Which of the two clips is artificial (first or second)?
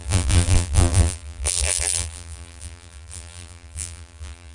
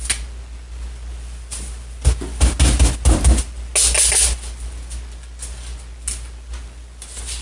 first